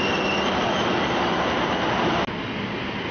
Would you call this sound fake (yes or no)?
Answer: no